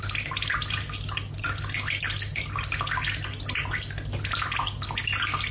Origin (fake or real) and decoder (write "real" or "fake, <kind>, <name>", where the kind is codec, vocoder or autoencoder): real